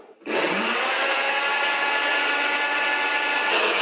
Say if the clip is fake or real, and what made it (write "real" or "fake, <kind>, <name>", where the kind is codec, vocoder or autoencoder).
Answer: fake, vocoder, WaveNeXt